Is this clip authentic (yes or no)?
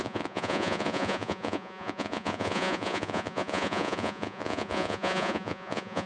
no